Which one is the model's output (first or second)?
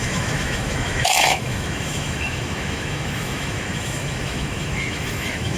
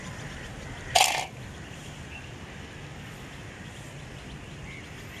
first